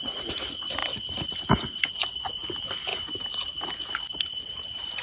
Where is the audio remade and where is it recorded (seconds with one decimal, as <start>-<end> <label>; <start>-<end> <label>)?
0.0-2.9 recorded; 2.9-3.6 remade; 3.6-5.0 recorded